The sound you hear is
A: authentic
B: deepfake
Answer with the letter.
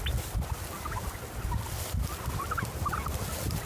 A